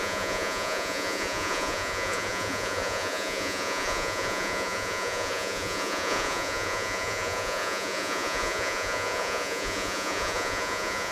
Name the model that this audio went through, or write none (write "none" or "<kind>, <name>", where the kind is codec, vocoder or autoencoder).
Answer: vocoder, Vocos